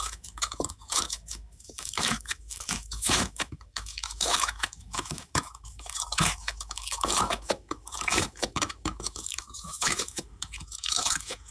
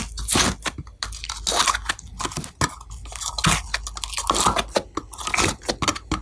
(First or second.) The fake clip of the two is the first